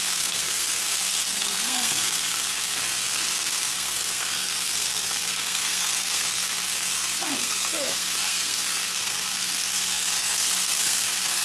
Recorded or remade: remade